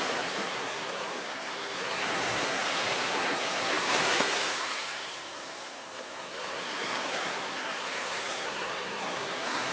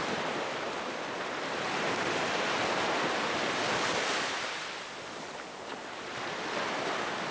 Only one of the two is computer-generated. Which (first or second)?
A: first